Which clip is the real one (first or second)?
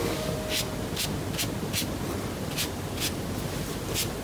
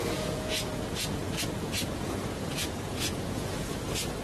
first